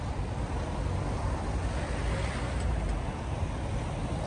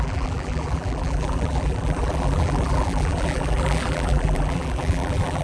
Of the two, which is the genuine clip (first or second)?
first